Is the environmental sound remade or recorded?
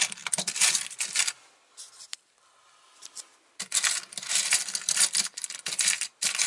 recorded